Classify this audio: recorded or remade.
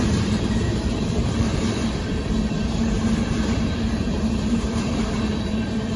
remade